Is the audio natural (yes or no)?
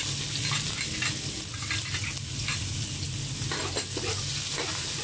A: yes